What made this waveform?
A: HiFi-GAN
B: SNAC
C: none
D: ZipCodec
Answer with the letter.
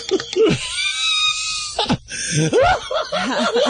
C